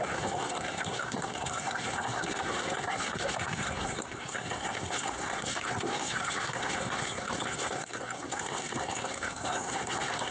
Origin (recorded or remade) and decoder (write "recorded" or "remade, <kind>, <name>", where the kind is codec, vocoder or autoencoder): remade, codec, SNAC